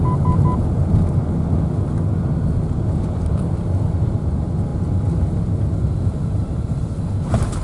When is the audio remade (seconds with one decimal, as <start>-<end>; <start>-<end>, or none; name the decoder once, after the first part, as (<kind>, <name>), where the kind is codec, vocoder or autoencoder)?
none